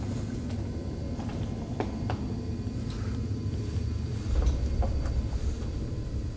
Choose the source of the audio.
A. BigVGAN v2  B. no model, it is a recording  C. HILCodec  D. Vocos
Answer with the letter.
B